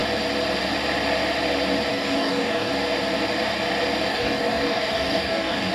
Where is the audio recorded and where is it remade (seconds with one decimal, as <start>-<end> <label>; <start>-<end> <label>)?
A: 0.0-1.9 recorded; 1.9-2.7 remade; 2.7-4.1 recorded; 4.1-5.7 remade